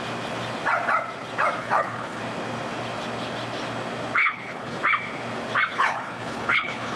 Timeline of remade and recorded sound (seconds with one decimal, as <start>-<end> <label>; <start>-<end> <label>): 0.0-1.6 recorded; 1.6-2.2 remade; 2.2-4.2 recorded; 4.2-4.8 remade; 4.8-5.7 recorded; 5.7-7.0 remade